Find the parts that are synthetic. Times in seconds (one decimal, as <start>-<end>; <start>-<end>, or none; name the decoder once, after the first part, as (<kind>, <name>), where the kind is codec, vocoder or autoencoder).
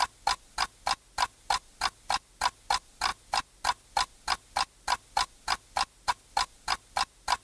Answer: none